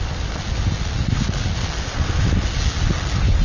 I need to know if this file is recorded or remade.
recorded